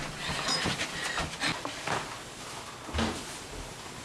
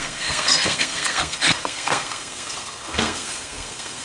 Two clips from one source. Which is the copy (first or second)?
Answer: second